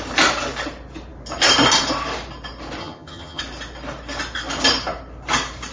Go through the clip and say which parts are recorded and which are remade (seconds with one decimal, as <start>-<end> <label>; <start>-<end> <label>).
0.0-2.8 recorded; 2.8-3.4 remade; 3.4-5.7 recorded